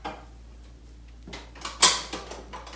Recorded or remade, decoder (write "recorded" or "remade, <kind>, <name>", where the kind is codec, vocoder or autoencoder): recorded